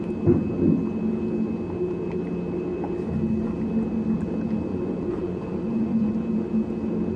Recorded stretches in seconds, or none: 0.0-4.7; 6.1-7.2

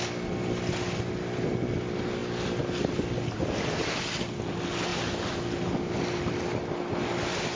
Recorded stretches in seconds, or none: 0.0-7.6